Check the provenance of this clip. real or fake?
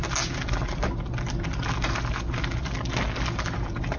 real